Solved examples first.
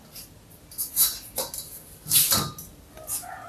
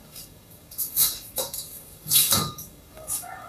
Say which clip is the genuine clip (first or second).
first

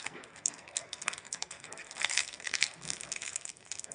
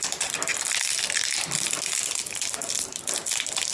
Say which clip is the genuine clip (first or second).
second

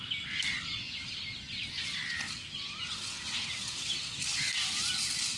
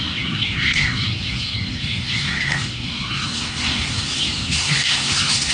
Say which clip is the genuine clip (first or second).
first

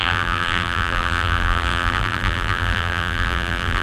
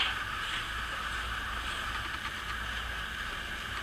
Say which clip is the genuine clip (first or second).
second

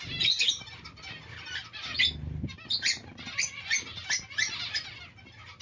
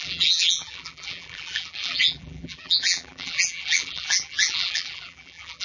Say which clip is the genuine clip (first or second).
first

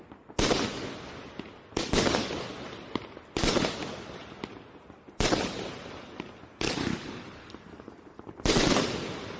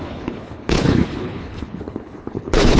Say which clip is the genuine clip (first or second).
first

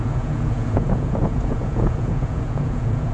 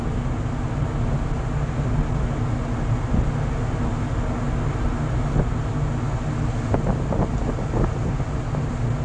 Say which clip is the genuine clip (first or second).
second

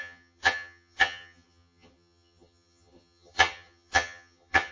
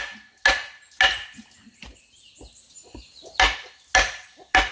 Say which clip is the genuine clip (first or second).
second